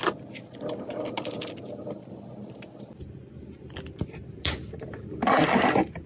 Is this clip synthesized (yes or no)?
no